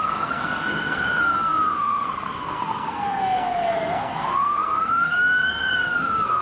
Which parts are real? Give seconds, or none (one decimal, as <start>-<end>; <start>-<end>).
none